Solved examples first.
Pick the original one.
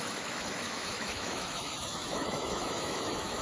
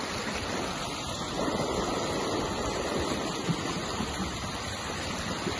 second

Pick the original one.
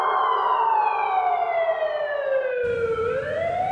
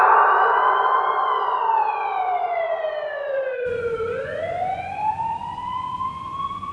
first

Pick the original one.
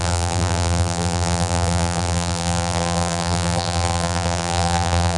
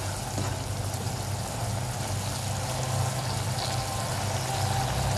second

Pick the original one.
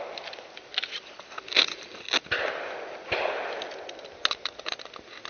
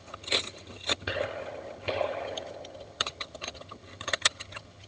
first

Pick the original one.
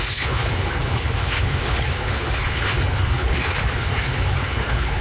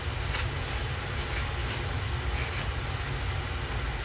second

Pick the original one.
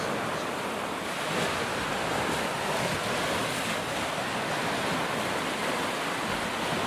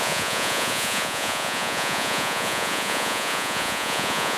first